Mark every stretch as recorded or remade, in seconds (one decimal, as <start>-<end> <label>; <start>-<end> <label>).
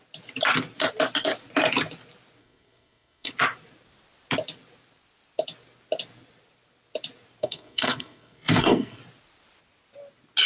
0.0-2.4 recorded; 2.4-3.3 remade; 3.3-7.4 recorded; 7.4-9.0 remade; 9.0-10.5 recorded